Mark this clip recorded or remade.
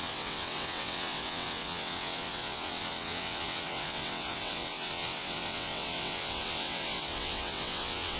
remade